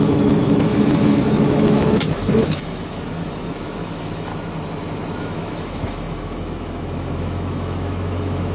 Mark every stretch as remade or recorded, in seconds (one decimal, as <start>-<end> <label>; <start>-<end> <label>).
0.0-4.3 remade; 4.3-5.2 recorded; 5.2-8.5 remade